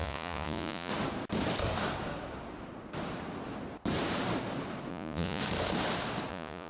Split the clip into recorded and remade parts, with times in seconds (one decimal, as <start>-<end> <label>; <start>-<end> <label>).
0.0-0.9 remade; 0.9-4.9 recorded; 4.9-5.4 remade; 5.4-6.3 recorded; 6.3-6.7 remade